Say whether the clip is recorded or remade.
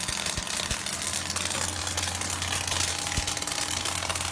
recorded